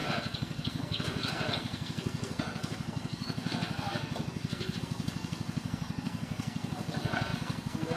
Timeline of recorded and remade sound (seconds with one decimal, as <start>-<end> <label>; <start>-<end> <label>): 0.0-8.0 remade